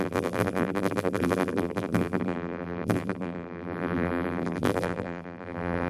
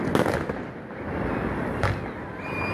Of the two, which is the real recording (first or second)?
second